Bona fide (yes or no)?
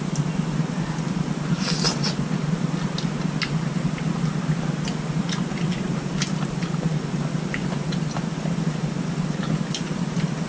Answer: yes